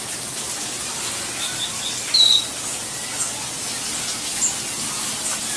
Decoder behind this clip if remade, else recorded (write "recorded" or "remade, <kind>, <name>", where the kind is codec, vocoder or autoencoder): recorded